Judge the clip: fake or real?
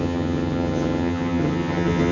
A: fake